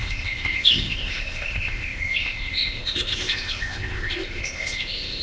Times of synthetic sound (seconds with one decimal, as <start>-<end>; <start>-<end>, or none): 0.0-5.2